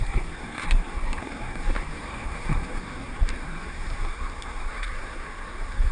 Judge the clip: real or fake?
fake